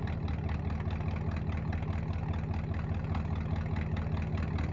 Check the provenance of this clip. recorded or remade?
recorded